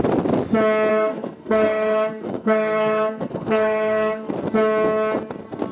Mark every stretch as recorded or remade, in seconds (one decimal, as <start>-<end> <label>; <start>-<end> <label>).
0.0-0.9 recorded; 0.9-4.3 remade; 4.3-5.7 recorded